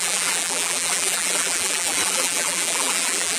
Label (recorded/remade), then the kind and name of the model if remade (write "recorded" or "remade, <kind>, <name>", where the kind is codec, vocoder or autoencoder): remade, vocoder, BigVGAN v2